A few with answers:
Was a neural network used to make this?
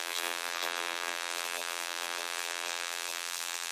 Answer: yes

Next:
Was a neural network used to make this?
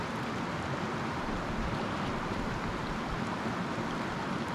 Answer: no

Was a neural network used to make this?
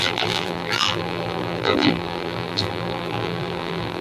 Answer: yes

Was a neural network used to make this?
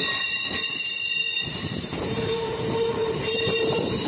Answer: yes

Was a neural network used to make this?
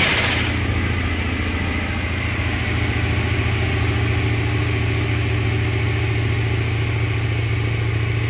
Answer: no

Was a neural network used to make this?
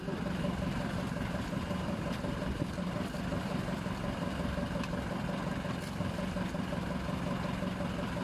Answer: yes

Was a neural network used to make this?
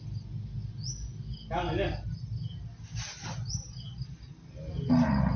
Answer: no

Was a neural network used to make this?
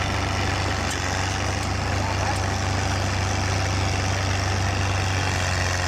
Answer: no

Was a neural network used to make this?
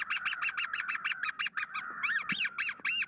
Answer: no